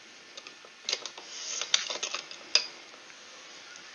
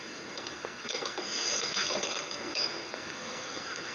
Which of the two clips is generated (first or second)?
second